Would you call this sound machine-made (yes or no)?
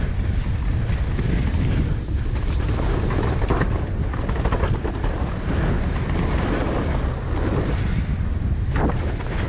no